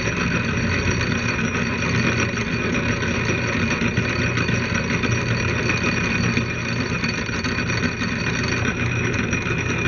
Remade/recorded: recorded